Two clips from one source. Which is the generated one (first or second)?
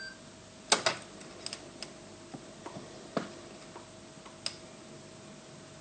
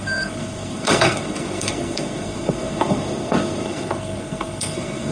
second